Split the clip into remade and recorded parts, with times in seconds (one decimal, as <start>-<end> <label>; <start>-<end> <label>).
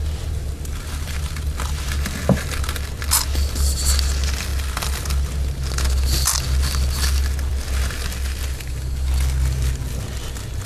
0.0-10.7 recorded